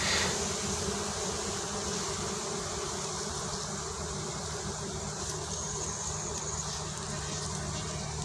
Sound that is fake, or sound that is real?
real